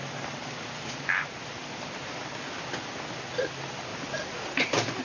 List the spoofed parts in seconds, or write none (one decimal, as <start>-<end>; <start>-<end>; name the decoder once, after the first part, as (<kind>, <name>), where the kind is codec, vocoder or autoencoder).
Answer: none